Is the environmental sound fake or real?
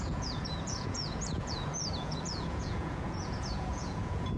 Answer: fake